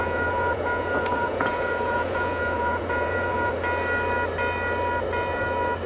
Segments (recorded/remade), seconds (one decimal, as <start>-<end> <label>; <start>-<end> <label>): 0.0-3.5 remade; 3.5-5.9 recorded

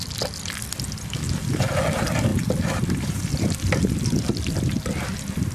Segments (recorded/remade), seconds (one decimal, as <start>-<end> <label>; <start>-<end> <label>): 0.0-2.3 recorded; 2.3-4.8 remade; 4.8-5.5 recorded

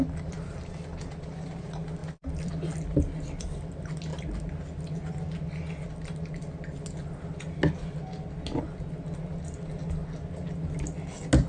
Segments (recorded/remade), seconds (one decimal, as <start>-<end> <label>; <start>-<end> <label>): 0.0-2.0 recorded; 2.0-2.5 remade; 2.5-11.5 recorded

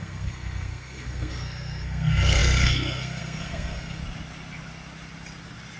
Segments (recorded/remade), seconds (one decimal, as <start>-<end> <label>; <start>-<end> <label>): 0.0-4.0 remade; 4.0-5.8 recorded

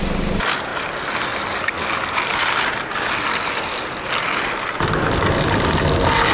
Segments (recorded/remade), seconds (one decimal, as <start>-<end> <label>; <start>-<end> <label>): 0.0-6.3 recorded

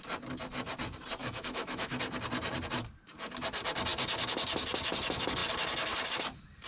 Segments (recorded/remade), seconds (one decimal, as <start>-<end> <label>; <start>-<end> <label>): 0.0-1.2 recorded; 1.2-2.0 remade; 2.0-6.7 recorded